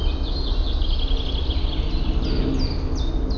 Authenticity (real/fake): real